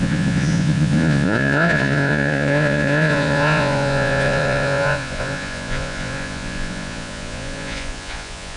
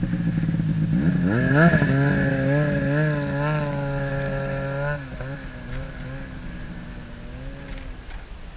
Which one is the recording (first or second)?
second